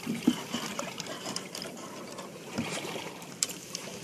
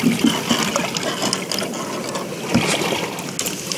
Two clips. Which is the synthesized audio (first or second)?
first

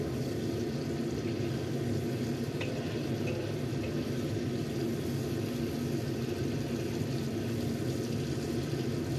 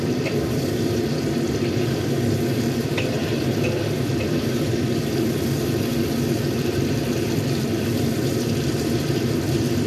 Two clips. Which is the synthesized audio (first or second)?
second